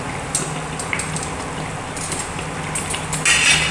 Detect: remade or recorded recorded